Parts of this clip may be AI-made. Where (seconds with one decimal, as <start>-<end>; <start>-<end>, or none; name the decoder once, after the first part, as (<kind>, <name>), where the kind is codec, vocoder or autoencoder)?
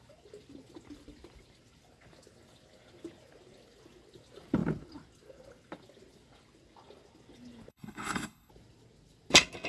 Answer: 7.7-8.5 (codec, HILCodec)